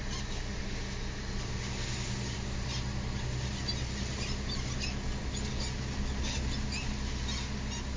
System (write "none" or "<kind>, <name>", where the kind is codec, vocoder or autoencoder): none